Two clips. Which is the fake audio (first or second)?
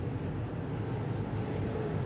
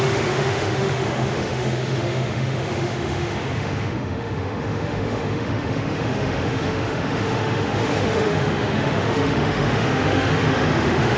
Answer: second